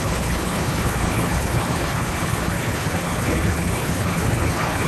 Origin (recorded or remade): remade